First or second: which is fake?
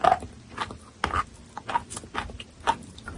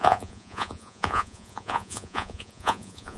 second